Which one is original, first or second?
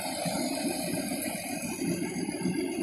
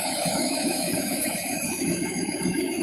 first